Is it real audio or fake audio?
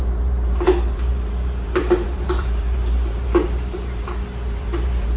fake